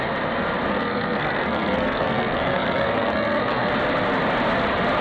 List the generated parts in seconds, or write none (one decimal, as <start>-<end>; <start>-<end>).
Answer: 0.7-3.7